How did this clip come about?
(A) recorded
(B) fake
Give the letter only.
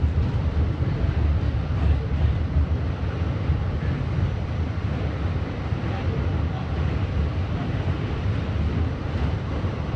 A